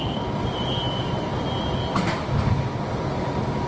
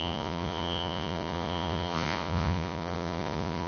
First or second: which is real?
first